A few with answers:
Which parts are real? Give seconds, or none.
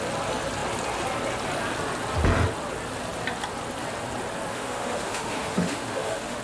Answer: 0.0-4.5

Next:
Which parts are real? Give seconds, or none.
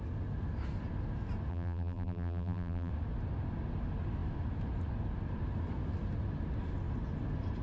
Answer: 0.0-1.5; 2.9-7.6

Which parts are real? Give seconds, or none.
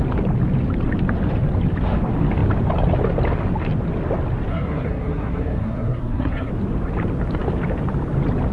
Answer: 0.0-4.5; 6.5-8.5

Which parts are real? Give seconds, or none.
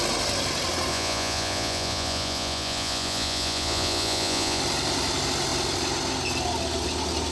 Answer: 0.0-0.9; 4.6-7.3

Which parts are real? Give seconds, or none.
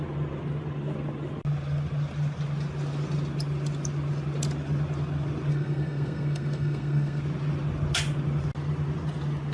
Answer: 0.0-5.5; 7.2-9.5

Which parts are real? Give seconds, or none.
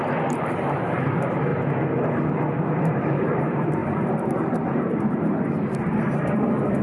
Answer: 1.5-2.8